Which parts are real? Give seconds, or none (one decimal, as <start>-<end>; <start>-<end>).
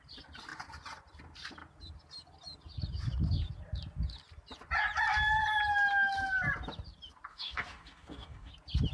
0.0-7.3; 8.5-8.9